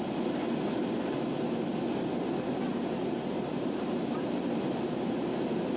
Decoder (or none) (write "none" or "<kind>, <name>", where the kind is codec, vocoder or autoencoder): none